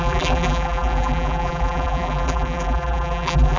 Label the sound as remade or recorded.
remade